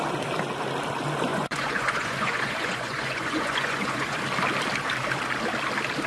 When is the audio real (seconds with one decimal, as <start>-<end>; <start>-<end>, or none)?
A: 0.0-1.3; 4.2-6.1